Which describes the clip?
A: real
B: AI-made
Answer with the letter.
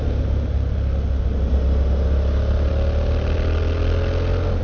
A